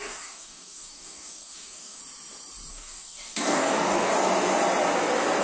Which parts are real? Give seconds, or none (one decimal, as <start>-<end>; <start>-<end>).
2.0-2.7; 4.1-5.4